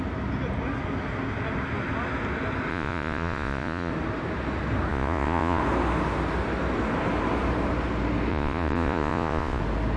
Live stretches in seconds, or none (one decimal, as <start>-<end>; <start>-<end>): 0.0-2.7; 3.9-4.9; 5.6-8.3; 9.6-10.0